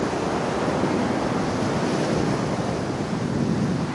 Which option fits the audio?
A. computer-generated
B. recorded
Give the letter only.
B